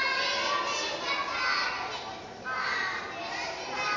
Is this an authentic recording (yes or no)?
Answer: yes